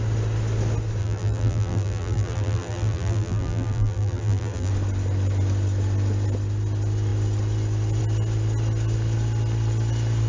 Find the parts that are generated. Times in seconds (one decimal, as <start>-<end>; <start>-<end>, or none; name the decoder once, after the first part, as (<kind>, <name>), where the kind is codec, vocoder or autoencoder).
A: 1.0-4.7 (vocoder, BigVGAN v2)